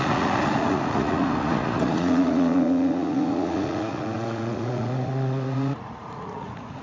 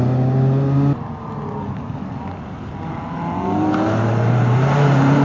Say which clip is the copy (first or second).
first